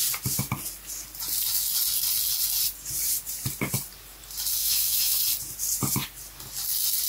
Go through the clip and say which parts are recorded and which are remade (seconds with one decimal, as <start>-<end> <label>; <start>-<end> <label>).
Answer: 0.0-4.6 recorded; 4.6-5.2 remade; 5.2-7.1 recorded